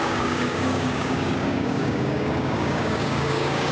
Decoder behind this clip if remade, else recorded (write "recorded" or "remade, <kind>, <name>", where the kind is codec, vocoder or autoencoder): remade, codec, DAC